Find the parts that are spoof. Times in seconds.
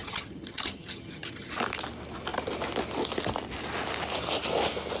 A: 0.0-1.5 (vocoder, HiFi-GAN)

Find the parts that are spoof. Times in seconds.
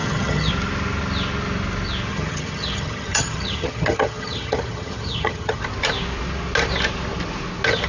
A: 0.0-0.5 (vocoder, HiFi-GAN); 2.1-5.6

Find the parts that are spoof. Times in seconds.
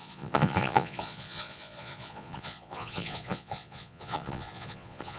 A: 0.0-5.2 (vocoder, Vocos)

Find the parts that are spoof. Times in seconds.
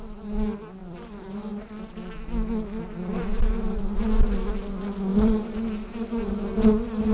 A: 0.8-1.7 (vocoder, BigVGAN v2)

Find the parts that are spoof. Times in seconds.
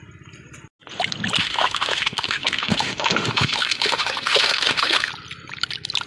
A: 1.4-5.1 (autoencoder, DAC-VAE)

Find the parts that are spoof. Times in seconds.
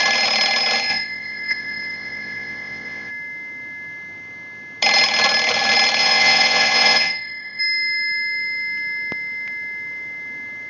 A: 0.9-3.1 (vocoder, WaveNeXt); 6.0-7.6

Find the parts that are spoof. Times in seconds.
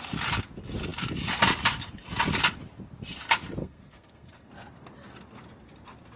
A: 3.6-4.5 (codec, SNAC)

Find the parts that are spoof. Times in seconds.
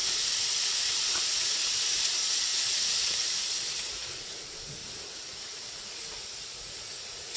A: 0.8-7.4 (vocoder, Vocos)